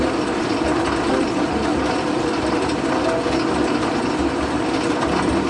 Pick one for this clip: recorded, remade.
recorded